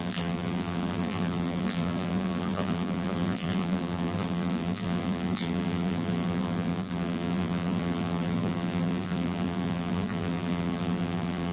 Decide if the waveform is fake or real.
fake